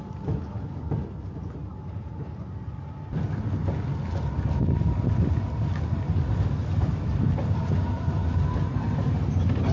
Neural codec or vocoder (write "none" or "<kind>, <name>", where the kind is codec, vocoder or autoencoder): none